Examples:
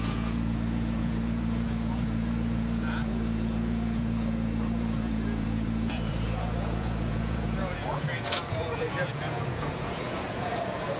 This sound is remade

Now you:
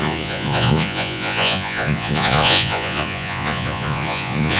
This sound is remade